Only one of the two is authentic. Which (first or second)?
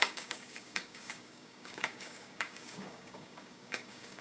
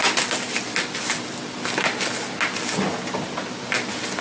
second